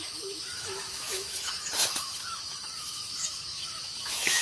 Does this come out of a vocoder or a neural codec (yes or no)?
yes